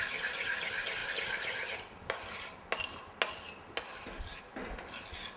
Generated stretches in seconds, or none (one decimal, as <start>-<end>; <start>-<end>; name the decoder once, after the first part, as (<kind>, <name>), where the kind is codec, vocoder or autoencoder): none